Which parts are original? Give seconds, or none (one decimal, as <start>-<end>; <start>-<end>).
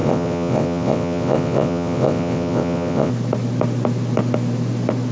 3.1-5.1